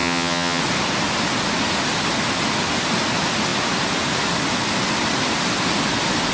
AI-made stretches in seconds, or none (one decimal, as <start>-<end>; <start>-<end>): 0.0-0.6